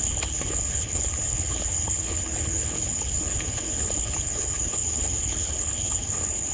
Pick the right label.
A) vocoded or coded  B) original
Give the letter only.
A